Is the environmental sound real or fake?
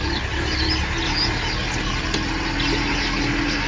real